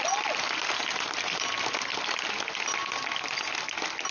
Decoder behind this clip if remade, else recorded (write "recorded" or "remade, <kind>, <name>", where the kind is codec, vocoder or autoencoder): recorded